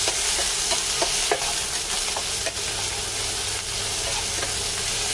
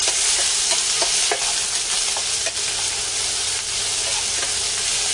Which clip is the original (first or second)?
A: first